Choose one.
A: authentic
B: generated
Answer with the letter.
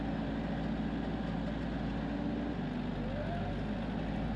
A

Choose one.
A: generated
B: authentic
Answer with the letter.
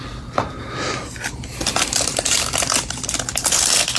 B